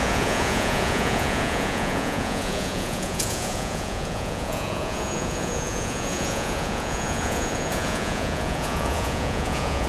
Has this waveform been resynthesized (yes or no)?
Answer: yes